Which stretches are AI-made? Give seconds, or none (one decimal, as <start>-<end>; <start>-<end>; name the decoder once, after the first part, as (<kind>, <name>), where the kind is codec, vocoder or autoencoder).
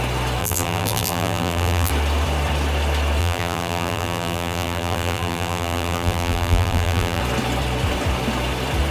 0.4-1.9 (vocoder, BigVGAN v2); 3.2-7.2